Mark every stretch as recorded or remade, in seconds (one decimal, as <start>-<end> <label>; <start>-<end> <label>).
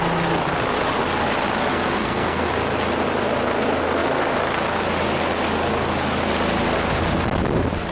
0.0-1.7 recorded; 1.7-2.5 remade; 2.5-7.9 recorded